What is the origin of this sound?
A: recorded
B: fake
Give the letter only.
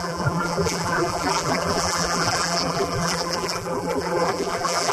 B